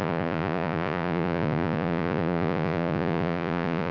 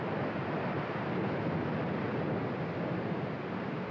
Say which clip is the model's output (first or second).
first